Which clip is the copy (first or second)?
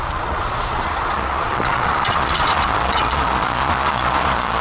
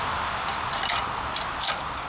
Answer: first